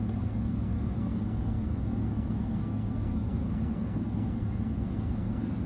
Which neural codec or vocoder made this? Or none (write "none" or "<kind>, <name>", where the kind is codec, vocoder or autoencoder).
codec, SNAC